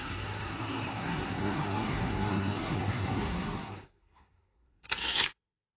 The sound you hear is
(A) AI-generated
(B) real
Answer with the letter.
A